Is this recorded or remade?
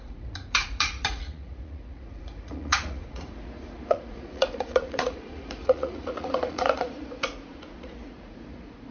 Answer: remade